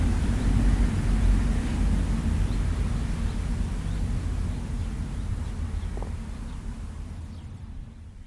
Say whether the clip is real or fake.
real